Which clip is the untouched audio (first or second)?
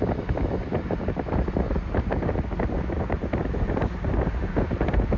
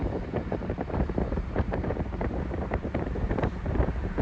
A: first